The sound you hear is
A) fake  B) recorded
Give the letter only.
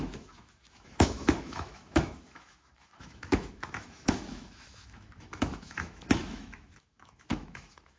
A